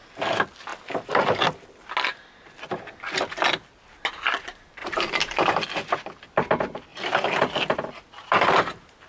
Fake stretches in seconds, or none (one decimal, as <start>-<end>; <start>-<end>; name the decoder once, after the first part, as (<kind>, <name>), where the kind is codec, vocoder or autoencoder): 0.7-1.2 (vocoder, BigVGAN v2); 4.8-5.5; 6.9-7.9